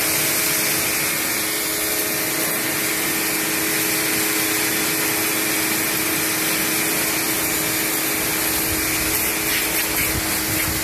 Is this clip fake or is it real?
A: real